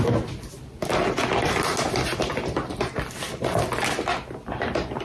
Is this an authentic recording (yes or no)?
yes